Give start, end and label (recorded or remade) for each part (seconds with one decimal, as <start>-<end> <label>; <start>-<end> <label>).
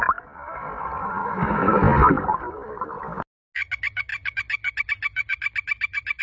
0.0-1.2 recorded; 1.2-1.8 remade; 1.8-6.2 recorded